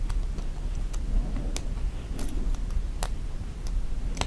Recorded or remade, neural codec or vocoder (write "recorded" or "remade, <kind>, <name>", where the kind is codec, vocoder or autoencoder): recorded